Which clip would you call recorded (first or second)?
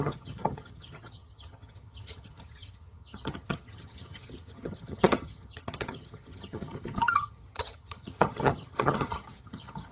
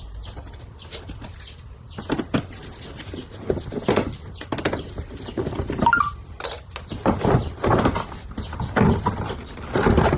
second